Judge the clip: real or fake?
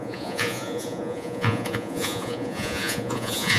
fake